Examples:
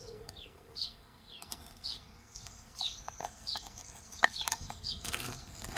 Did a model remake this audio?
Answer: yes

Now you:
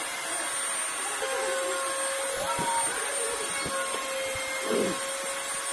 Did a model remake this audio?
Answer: no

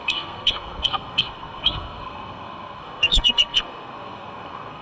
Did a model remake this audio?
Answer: yes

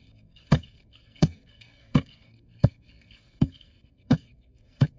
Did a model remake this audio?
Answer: yes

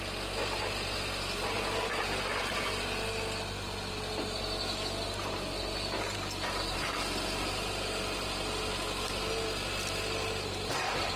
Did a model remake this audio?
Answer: no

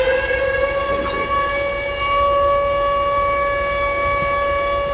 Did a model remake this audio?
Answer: no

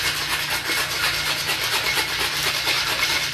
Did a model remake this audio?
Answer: no